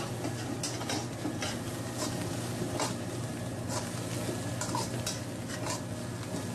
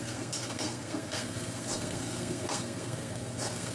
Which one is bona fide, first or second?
first